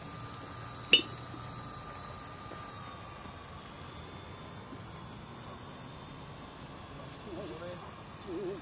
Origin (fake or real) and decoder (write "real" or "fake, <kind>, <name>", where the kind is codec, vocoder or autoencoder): real